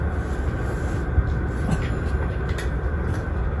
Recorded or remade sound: recorded